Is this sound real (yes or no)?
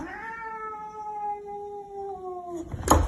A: yes